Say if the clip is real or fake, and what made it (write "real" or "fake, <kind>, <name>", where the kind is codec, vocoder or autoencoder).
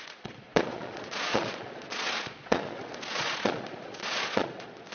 fake, vocoder, Vocos